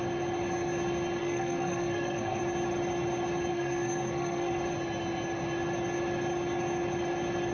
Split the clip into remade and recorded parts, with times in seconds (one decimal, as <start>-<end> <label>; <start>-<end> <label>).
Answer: 0.0-1.2 recorded; 1.2-2.4 remade; 2.4-3.5 recorded; 3.5-4.5 remade; 4.5-7.5 recorded